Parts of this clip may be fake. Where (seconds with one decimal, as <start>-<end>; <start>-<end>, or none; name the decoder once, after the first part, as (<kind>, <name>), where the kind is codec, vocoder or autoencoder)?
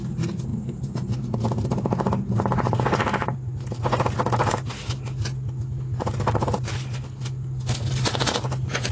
0.5-1.4 (vocoder, BigVGAN v2)